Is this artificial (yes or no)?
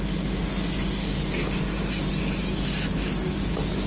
no